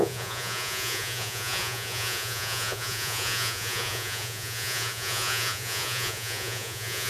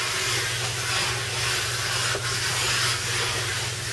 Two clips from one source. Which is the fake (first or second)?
first